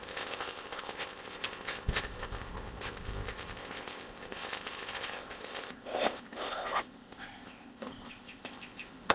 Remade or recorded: remade